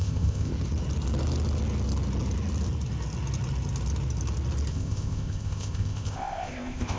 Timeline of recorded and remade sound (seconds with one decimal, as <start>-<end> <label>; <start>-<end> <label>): 0.0-0.5 remade; 0.5-4.7 recorded; 4.7-7.0 remade